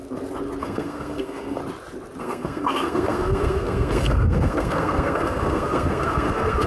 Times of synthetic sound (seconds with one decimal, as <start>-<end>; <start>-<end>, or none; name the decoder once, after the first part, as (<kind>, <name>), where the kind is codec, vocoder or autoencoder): 0.6-1.6 (codec, SNAC); 2.2-6.7